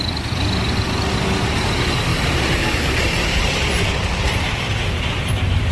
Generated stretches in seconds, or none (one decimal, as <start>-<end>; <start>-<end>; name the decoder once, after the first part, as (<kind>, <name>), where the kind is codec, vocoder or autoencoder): 2.1-4.5 (vocoder, BigVGAN v2)